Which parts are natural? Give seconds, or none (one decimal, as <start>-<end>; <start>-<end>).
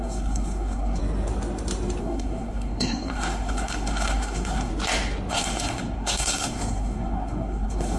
1.0-2.0; 4.7-5.3